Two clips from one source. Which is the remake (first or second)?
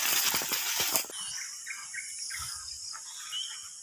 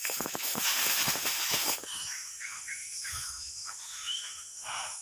second